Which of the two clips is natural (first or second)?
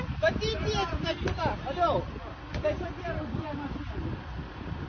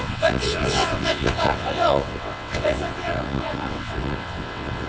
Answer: first